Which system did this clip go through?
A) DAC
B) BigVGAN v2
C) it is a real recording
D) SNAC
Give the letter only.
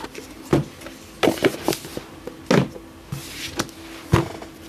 C